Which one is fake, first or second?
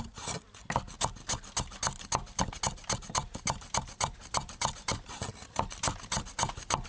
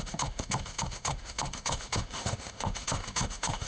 second